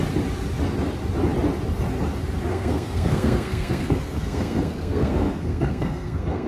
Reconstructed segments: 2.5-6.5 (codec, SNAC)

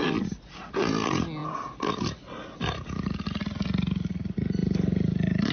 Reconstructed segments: none

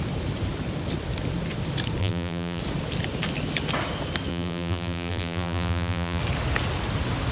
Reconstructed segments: 2.0-2.6 (vocoder, BigVGAN v2); 4.3-6.2

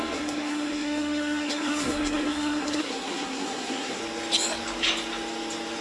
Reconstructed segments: 0.0-4.0 (codec, SNAC)

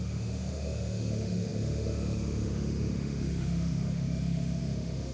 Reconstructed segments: 0.0-5.1 (autoencoder, DAC-VAE)